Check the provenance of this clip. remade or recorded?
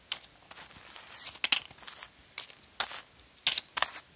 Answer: recorded